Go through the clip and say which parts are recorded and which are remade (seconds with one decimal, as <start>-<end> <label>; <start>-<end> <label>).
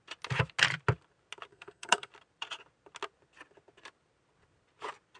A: 0.0-1.5 recorded; 1.5-2.1 remade; 2.1-5.2 recorded